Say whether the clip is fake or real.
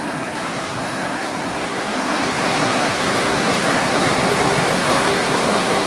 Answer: fake